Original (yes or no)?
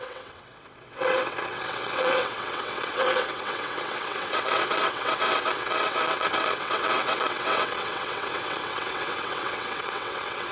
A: no